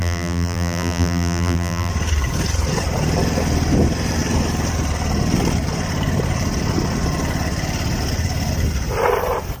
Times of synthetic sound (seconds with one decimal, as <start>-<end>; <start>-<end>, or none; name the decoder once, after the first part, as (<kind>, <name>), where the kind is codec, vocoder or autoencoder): 0.0-1.9 (vocoder, BigVGAN v2)